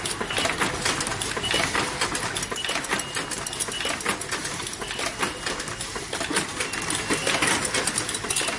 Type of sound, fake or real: real